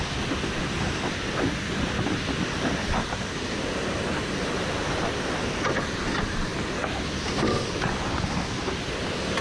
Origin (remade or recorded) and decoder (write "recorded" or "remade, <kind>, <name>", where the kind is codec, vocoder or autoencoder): recorded